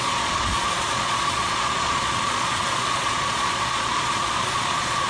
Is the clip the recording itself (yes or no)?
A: no